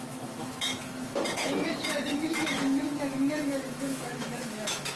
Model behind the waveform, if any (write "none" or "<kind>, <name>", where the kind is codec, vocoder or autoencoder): autoencoder, DAC-VAE